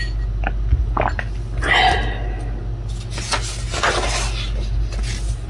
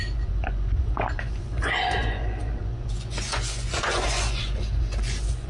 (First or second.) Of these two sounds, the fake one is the second